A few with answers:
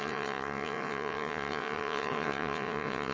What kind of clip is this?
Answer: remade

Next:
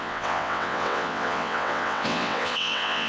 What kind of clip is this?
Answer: remade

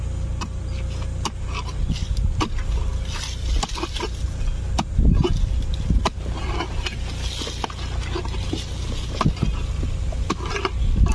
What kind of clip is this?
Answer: recorded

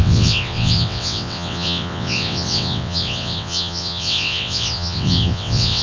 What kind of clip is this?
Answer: remade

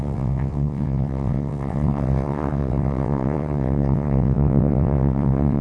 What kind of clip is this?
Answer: remade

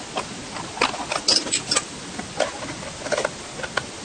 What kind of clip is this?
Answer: recorded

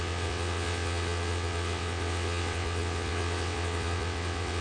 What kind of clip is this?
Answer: remade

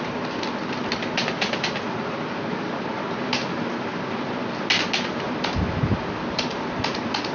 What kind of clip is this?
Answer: recorded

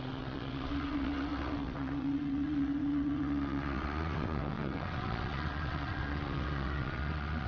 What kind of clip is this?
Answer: remade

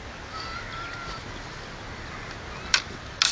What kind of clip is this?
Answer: recorded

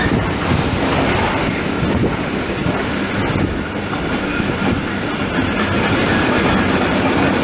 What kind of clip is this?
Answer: recorded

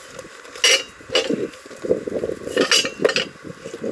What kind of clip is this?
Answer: recorded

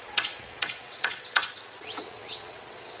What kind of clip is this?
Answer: remade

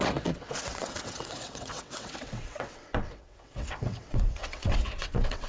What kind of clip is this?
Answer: remade